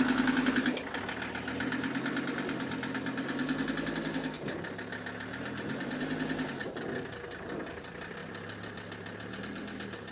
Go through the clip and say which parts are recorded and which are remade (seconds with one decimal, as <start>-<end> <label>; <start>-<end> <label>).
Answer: 0.0-6.6 recorded; 6.6-7.5 remade; 7.5-10.1 recorded